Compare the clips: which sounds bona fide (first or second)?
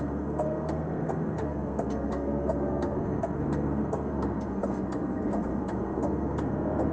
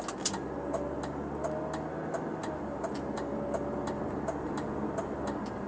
second